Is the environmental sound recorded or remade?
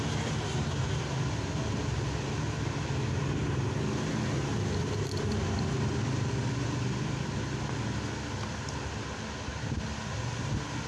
recorded